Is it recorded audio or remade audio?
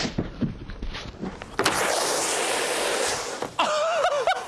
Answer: recorded